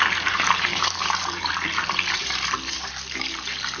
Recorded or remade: remade